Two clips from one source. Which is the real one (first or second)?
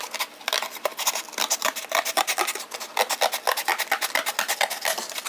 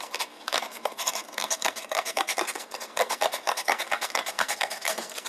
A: first